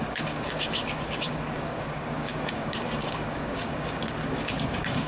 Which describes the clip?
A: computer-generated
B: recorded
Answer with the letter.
A